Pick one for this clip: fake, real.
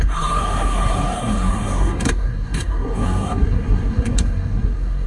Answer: fake